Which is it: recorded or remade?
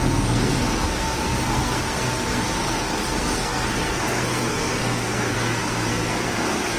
remade